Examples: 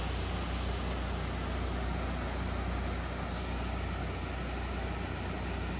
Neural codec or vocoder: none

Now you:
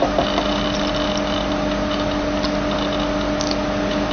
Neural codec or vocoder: none